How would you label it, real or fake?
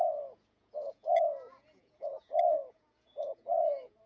fake